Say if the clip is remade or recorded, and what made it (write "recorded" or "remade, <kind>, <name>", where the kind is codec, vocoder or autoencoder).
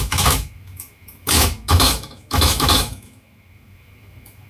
remade, autoencoder, DAC-VAE